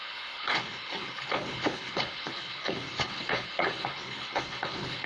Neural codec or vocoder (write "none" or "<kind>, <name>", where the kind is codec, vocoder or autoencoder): codec, HILCodec